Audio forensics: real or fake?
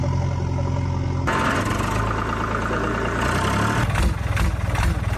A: real